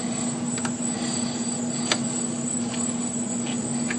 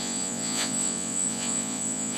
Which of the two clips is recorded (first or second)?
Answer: first